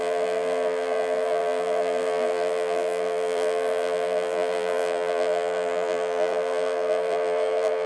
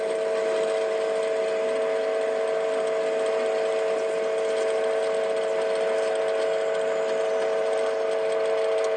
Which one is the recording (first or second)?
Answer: second